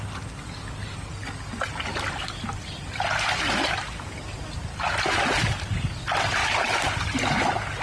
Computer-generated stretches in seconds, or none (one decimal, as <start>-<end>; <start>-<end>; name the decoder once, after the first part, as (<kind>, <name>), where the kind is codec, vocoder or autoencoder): none